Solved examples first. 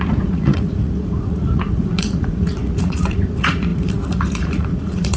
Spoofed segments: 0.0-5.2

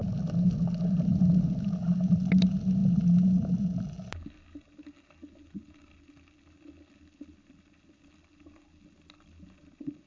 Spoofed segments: none

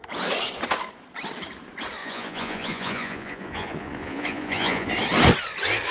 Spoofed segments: 2.0-4.9